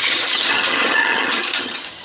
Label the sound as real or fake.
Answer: fake